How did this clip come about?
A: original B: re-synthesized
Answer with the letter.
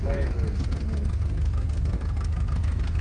B